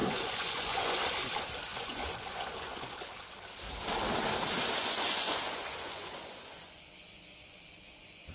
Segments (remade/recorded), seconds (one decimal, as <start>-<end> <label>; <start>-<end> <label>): 0.0-1.0 remade; 1.0-1.7 recorded; 1.7-2.9 remade; 2.9-4.8 recorded; 4.8-8.3 remade